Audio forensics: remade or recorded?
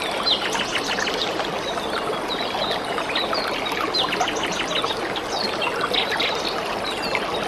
recorded